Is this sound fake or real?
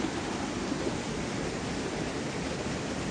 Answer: real